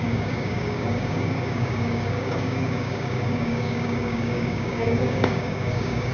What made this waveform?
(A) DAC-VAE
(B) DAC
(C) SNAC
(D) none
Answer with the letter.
B